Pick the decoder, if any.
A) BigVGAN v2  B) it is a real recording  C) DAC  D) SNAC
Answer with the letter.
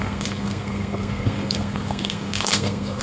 D